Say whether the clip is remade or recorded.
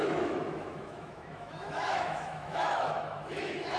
remade